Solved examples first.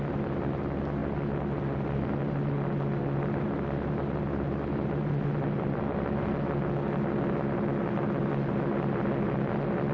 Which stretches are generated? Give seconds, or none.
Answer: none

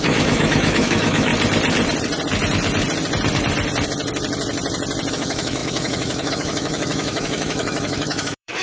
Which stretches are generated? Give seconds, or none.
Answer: 0.0-1.3 (autoencoder, DAC-VAE); 5.1-8.6

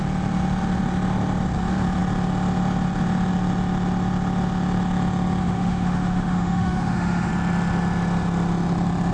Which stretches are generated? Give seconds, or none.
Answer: 5.4-7.3 (autoencoder, DAC-VAE)

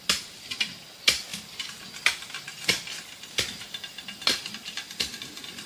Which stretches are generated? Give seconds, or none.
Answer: none

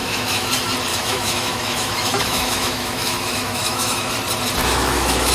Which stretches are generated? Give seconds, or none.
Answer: 0.0-0.5 (autoencoder, DAC-VAE); 0.9-4.1; 4.6-5.3